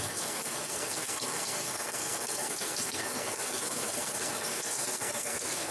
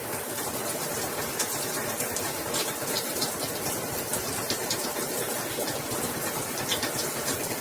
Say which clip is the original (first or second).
second